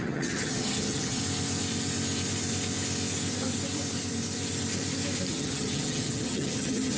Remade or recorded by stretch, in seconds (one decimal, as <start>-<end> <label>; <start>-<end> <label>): 0.0-1.2 remade; 1.2-5.3 recorded; 5.3-7.0 remade